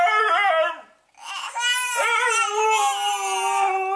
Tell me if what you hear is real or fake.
real